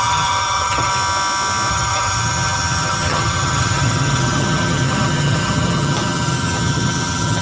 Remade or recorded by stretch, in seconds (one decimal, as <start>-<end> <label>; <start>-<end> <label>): 0.0-0.9 remade; 0.9-1.7 recorded; 1.7-7.4 remade